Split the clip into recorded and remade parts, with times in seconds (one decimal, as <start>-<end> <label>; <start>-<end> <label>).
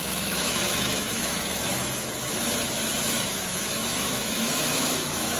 0.0-5.4 remade